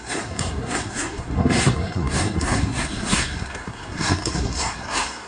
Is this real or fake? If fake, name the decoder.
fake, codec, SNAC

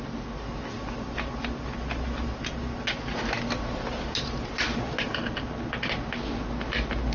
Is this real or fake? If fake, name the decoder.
real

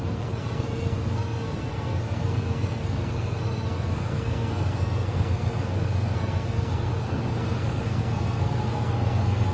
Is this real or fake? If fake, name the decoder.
fake, codec, SNAC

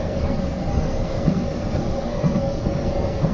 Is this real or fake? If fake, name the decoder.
fake, codec, SNAC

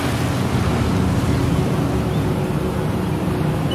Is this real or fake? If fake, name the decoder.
real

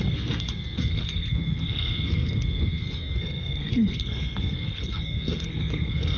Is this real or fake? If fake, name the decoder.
fake, codec, SNAC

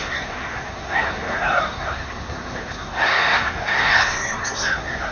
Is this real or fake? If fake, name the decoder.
fake, codec, SNAC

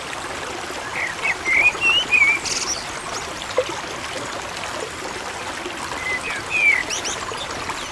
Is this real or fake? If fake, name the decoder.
real